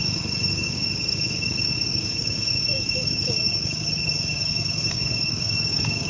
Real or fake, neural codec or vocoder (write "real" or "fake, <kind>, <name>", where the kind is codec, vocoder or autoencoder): fake, codec, DAC